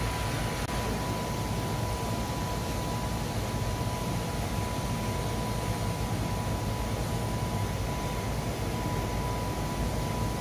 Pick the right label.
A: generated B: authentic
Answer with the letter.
B